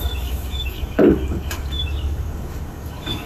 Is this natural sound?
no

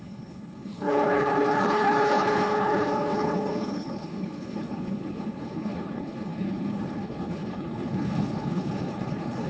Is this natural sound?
no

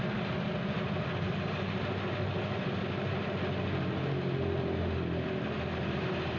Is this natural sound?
yes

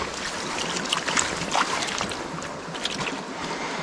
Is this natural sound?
yes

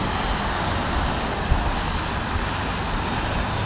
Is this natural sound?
yes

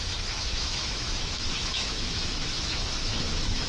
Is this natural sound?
no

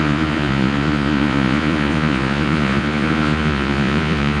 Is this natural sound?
no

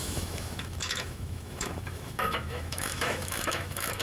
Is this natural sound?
no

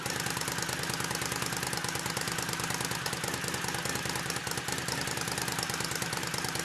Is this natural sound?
yes